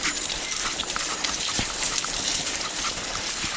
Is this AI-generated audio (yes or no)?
yes